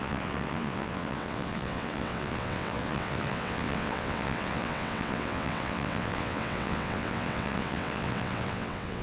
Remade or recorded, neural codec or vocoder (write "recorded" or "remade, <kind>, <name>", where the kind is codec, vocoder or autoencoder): remade, vocoder, WaveNeXt